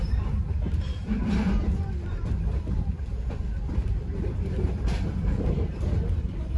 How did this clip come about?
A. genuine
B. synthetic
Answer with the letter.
B